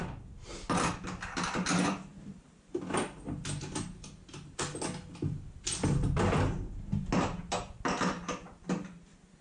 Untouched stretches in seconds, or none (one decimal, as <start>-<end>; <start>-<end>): 0.0-2.1; 6.4-9.4